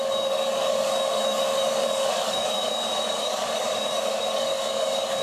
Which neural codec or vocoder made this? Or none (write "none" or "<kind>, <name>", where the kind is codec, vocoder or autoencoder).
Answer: codec, DAC